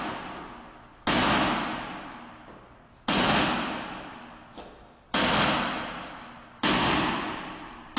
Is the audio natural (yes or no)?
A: yes